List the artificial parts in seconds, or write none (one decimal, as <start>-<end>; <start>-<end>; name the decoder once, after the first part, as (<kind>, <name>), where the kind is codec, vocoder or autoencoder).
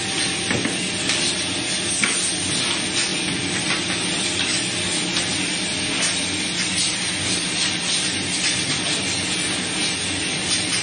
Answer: none